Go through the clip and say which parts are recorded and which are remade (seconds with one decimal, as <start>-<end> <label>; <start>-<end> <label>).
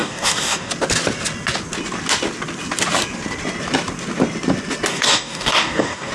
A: 0.0-0.7 remade; 0.7-4.9 recorded; 4.9-6.1 remade